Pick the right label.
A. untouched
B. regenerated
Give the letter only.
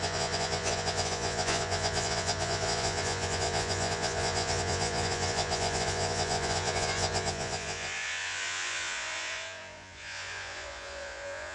B